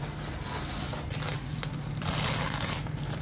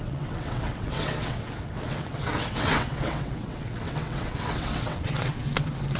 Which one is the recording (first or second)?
first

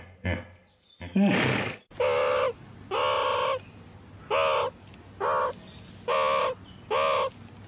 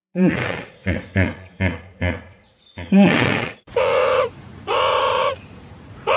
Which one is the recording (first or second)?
first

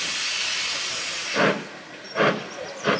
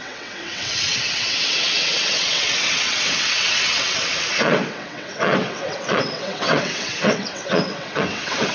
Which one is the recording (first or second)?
first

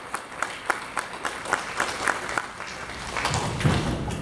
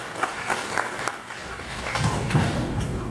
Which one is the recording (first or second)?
first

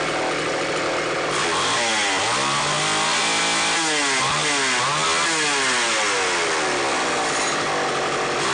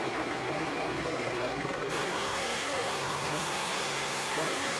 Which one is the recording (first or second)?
first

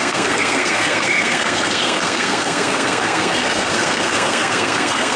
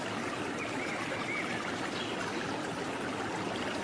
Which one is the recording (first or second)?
second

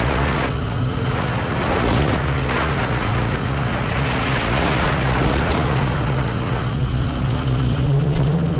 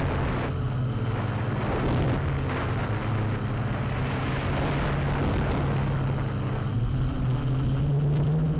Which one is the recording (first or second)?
second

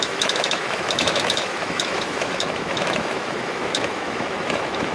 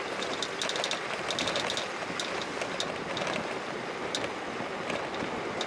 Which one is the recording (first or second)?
second